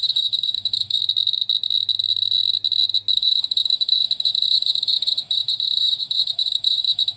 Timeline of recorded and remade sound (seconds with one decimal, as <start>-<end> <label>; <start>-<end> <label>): 0.0-1.0 remade; 1.0-3.1 recorded; 3.1-7.2 remade